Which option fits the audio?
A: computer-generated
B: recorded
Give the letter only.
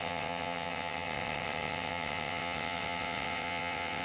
A